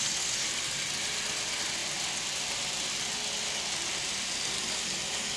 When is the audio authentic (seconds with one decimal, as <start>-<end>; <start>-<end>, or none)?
0.0-5.4